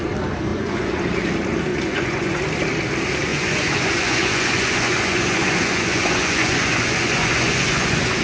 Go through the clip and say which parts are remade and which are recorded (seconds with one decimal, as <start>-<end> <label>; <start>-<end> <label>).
0.0-0.5 recorded; 0.5-1.0 remade; 1.0-1.7 recorded; 1.7-2.4 remade; 2.4-3.3 recorded; 3.3-8.2 remade